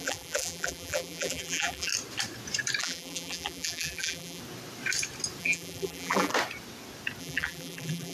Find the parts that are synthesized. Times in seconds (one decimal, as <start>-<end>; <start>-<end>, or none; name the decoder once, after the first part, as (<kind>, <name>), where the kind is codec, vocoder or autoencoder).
0.0-1.9 (vocoder, BigVGAN v2); 2.8-4.4; 5.4-6.3; 7.2-8.1